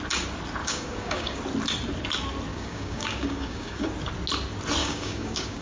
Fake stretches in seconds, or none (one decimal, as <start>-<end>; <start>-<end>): 0.6-1.4; 2.5-3.9; 4.8-5.6